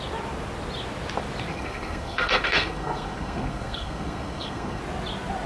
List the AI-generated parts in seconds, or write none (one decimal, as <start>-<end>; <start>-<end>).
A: 1.5-4.8